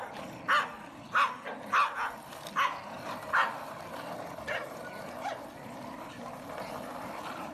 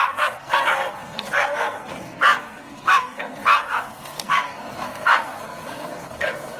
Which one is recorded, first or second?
first